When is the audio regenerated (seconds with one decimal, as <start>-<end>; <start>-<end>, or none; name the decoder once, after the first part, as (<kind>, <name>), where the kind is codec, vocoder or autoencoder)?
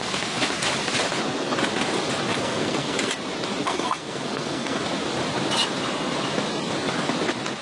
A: 2.3-3.1 (codec, SNAC); 3.6-4.8